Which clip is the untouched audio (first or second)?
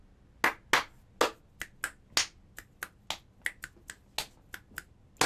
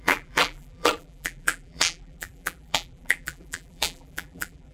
first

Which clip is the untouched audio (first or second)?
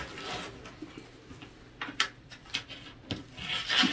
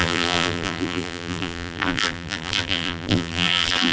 first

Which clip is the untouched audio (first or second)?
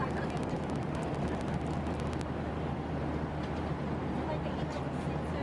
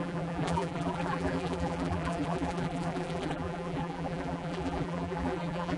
first